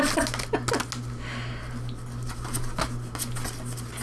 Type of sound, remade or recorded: recorded